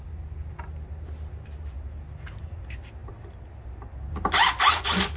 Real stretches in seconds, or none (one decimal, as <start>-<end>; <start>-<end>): 0.0-5.2

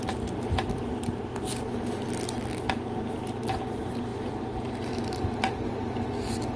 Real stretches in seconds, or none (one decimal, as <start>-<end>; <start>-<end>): 0.0-6.6

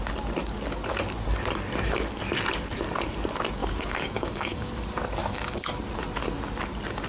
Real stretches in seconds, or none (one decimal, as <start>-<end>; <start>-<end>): 0.0-3.6; 4.7-5.2; 5.7-7.1